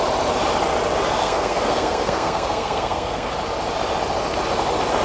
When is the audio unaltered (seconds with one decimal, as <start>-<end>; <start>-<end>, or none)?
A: 0.0-1.2; 3.3-5.0